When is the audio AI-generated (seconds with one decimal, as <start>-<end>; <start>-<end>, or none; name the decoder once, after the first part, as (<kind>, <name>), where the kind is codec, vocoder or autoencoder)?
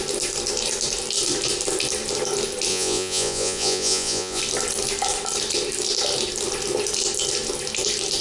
2.7-4.4 (vocoder, Vocos)